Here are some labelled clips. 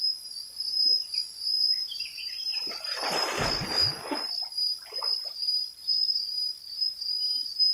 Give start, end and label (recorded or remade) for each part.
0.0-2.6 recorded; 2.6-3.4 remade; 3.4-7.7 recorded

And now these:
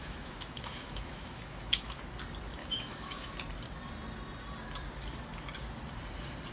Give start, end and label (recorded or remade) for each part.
0.0-2.0 remade; 2.0-2.6 recorded; 2.6-3.3 remade; 3.3-6.5 recorded

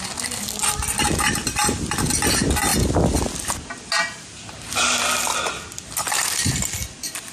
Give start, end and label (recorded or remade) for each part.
0.0-7.3 recorded

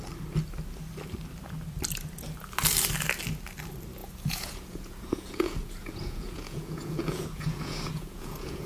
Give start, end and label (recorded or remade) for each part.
0.0-4.0 recorded; 4.0-8.7 remade

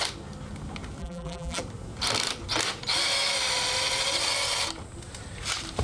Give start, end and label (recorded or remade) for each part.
0.0-1.0 recorded; 1.0-1.6 remade; 1.6-5.8 recorded

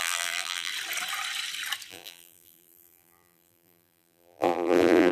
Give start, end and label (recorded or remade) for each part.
0.0-0.7 remade; 0.7-1.9 recorded; 1.9-5.1 remade

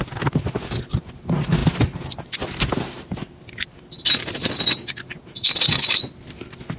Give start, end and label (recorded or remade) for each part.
0.0-6.8 recorded